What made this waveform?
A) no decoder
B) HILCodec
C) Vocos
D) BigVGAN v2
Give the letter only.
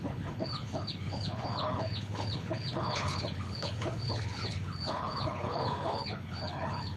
B